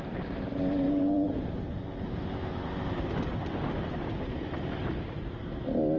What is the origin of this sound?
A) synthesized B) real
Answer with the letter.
B